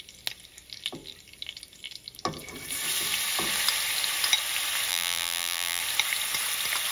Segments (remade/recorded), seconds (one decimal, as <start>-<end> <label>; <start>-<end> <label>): 0.0-4.9 recorded; 4.9-5.8 remade; 5.8-6.9 recorded